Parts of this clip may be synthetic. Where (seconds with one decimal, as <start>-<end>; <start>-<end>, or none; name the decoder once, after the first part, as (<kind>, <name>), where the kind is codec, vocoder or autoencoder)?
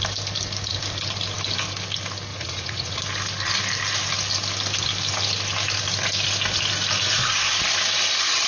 2.3-3.0 (vocoder, Vocos)